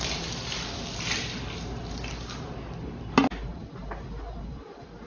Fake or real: real